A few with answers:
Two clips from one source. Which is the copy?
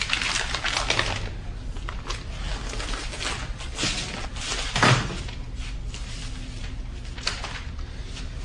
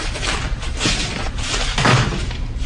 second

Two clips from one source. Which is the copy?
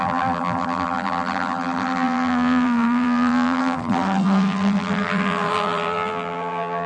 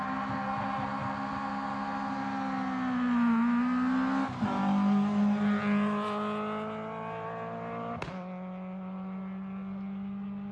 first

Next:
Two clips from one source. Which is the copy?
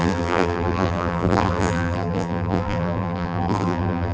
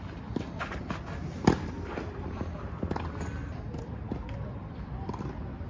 first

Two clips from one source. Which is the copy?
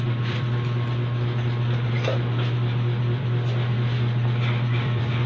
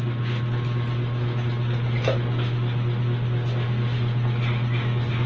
first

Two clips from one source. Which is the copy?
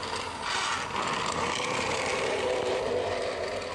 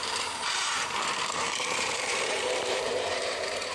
second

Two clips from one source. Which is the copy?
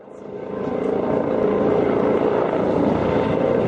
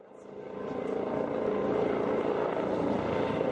first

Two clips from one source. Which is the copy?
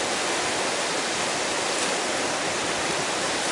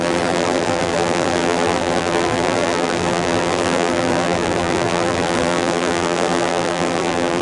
second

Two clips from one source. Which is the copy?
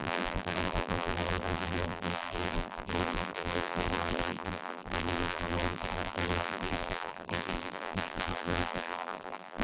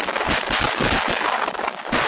first